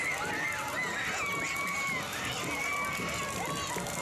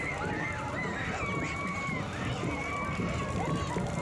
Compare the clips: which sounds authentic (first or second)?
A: first